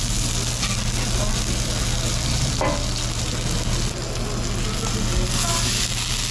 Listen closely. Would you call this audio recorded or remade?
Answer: recorded